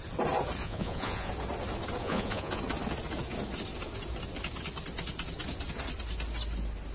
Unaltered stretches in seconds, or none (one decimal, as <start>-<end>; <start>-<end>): 0.0-0.6; 1.3-2.0; 2.6-6.9